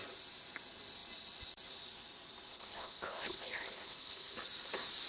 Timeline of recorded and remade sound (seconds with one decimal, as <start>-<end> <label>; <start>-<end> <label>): 0.0-2.5 recorded; 2.5-4.3 remade; 4.3-5.1 recorded